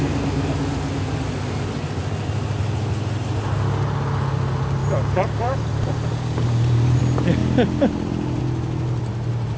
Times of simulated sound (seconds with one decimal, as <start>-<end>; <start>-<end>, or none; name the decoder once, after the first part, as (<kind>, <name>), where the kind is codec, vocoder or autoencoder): 4.8-7.0 (vocoder, BigVGAN v2); 7.4-8.4